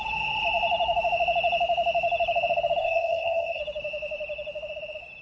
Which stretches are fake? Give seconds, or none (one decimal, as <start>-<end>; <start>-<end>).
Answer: 2.8-3.6